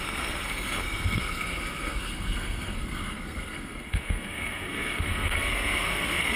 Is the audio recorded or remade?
remade